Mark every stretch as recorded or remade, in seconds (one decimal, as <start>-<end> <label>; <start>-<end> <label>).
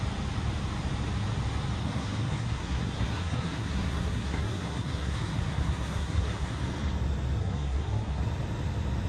0.0-1.8 recorded; 1.8-6.6 remade; 6.6-7.4 recorded; 7.4-8.2 remade; 8.2-9.1 recorded